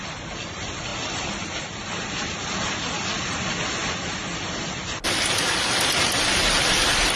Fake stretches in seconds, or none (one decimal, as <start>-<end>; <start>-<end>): 0.0-7.2